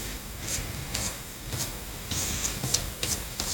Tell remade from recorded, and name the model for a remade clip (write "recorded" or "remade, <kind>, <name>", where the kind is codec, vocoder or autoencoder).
remade, codec, DAC